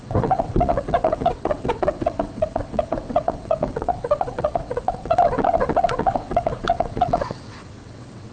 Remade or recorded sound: remade